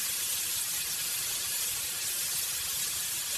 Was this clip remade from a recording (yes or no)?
no